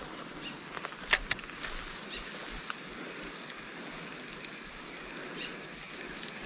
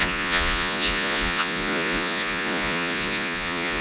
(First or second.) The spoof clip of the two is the second